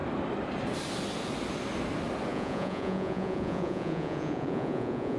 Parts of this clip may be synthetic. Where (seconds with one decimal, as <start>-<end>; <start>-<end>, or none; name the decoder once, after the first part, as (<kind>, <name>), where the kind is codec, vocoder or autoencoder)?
2.3-5.2 (vocoder, Vocos)